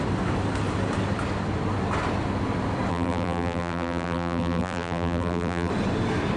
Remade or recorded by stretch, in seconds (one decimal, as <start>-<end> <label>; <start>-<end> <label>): 0.0-2.9 recorded; 2.9-5.7 remade; 5.7-6.4 recorded